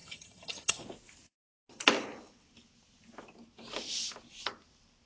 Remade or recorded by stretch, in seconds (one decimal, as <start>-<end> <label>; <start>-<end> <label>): 0.0-0.8 remade; 0.8-5.1 recorded